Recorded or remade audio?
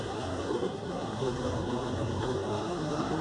remade